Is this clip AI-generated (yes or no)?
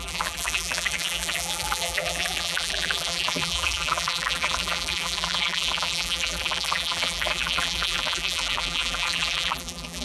yes